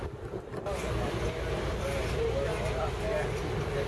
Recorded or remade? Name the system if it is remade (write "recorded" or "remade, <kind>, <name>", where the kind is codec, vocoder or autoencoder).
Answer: recorded